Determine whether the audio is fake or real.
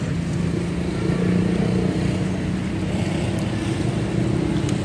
real